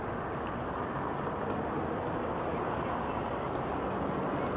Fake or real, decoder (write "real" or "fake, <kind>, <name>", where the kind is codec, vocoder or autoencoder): real